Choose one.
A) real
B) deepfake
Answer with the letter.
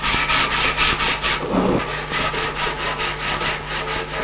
A